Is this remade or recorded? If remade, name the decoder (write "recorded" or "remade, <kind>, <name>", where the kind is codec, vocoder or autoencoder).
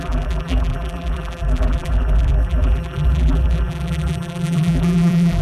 remade, vocoder, BigVGAN v2